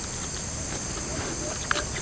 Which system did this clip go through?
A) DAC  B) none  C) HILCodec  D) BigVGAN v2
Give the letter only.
B